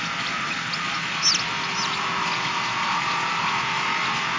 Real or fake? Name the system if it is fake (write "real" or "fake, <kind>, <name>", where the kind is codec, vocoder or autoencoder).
real